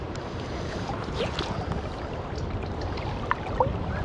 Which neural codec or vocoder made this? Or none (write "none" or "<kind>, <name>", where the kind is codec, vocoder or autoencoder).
none